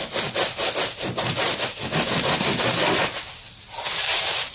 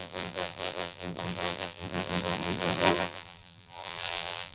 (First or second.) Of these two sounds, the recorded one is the first